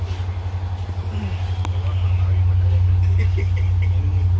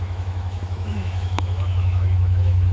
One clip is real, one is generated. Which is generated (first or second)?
second